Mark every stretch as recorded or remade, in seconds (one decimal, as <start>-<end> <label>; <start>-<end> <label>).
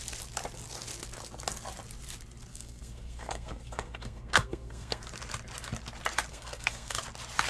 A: 0.0-2.5 recorded; 2.5-5.0 remade; 5.0-6.3 recorded; 6.3-7.0 remade; 7.0-7.5 recorded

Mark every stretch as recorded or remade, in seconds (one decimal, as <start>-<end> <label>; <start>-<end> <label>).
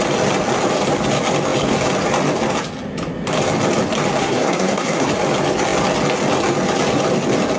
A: 0.0-4.2 recorded; 4.2-5.1 remade; 5.1-7.6 recorded